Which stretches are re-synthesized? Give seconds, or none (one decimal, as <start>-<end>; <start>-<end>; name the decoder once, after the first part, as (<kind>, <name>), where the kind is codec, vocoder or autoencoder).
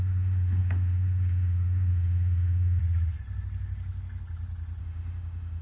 0.0-2.8 (autoencoder, DAC-VAE); 4.8-5.6